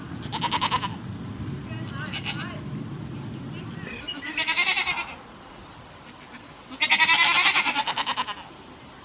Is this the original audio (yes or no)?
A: yes